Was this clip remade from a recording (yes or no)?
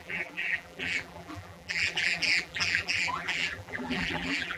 yes